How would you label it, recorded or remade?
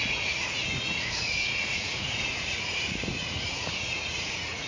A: remade